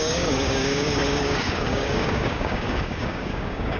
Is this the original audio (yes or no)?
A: no